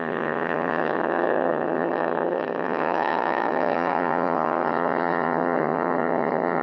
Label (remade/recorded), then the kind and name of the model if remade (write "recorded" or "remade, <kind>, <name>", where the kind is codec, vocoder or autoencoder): remade, vocoder, HiFi-GAN